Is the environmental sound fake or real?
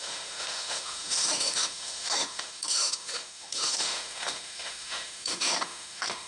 fake